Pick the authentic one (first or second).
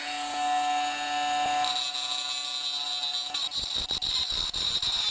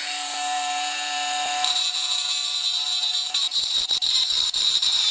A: first